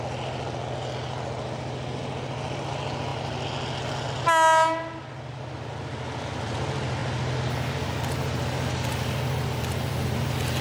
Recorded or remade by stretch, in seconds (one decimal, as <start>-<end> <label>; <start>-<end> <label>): 0.0-10.6 recorded